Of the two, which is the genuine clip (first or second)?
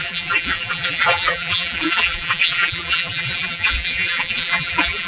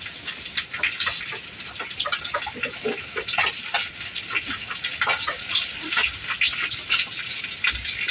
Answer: second